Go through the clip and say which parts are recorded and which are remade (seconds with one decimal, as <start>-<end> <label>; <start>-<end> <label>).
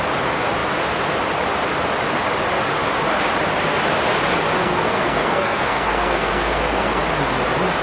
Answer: 0.0-4.6 recorded; 4.6-7.0 remade; 7.0-7.8 recorded